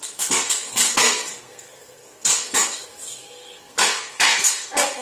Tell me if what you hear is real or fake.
fake